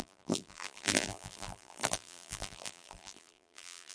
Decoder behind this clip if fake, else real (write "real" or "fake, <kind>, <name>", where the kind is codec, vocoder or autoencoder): fake, vocoder, BigVGAN v2